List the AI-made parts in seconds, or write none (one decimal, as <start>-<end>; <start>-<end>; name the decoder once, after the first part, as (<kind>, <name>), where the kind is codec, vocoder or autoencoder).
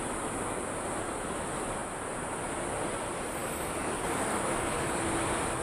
3.4-5.0 (codec, DAC)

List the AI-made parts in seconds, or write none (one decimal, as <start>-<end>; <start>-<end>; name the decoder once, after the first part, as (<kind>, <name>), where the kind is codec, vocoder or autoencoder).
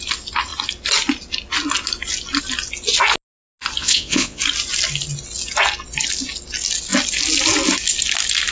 3.8-4.4 (vocoder, Vocos)